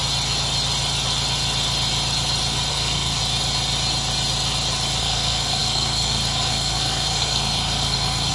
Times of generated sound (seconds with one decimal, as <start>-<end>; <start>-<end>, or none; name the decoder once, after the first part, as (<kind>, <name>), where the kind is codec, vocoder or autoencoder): 2.7-3.2 (codec, SNAC); 5.0-8.3